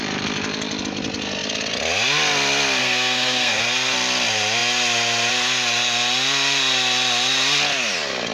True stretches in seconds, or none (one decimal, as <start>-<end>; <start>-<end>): 0.0-2.8; 3.6-8.3